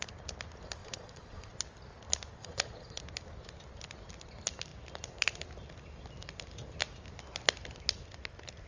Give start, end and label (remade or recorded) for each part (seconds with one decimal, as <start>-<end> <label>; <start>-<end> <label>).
0.0-0.8 recorded; 0.8-1.5 remade; 1.5-2.4 recorded; 2.4-3.0 remade; 3.0-8.7 recorded